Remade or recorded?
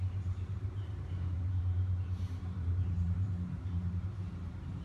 remade